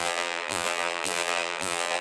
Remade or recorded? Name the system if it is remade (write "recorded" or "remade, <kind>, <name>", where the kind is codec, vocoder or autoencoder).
remade, vocoder, BigVGAN v2